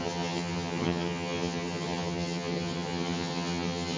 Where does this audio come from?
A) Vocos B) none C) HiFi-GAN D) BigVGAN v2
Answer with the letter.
C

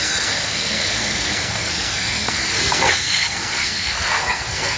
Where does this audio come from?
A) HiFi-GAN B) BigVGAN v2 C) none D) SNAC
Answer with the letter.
D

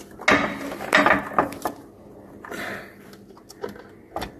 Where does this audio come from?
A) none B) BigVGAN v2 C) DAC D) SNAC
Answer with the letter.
A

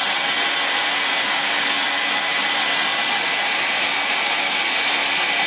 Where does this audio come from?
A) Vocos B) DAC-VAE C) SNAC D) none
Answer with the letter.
D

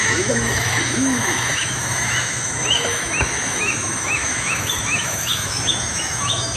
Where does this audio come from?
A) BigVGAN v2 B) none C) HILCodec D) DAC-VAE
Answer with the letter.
D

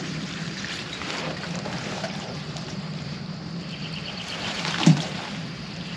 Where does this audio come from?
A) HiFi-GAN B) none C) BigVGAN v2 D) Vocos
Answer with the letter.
C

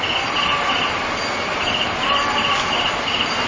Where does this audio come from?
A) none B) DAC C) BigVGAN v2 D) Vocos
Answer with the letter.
A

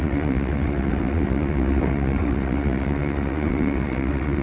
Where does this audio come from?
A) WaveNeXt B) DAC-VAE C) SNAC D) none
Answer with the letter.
A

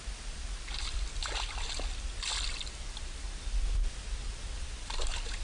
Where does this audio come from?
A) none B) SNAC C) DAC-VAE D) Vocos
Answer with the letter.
A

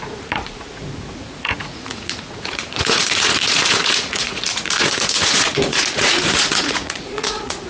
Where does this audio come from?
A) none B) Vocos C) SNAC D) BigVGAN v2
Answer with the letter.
B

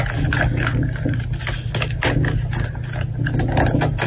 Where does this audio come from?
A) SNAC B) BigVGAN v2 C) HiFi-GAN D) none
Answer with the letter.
D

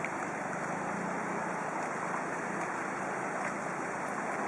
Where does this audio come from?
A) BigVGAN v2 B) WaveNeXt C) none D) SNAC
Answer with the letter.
C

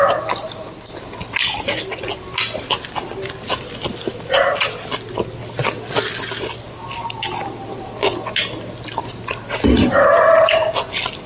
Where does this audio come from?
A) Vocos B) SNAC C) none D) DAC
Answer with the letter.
C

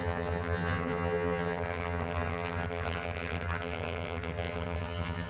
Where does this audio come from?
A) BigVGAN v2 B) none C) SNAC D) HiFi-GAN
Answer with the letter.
D